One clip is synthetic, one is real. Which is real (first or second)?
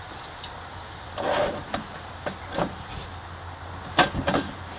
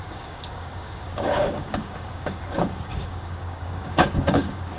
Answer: first